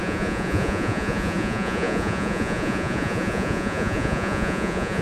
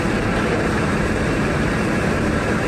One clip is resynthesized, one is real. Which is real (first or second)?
second